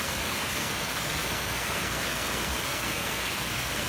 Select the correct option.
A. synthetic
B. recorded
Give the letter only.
A